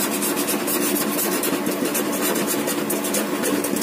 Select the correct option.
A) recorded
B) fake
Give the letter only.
A